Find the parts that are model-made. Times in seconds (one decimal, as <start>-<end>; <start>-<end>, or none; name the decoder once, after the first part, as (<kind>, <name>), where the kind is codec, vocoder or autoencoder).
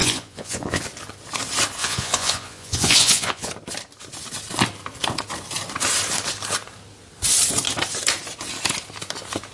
0.0-0.8 (vocoder, Vocos); 1.8-3.5